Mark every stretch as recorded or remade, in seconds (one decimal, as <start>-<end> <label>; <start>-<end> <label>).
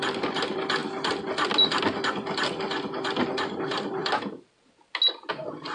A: 0.0-5.7 recorded